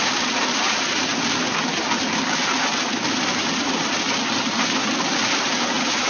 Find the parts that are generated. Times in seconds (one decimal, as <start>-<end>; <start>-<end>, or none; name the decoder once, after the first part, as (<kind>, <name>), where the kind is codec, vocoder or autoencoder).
none